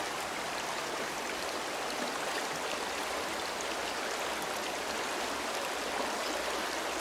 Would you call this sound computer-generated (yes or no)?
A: no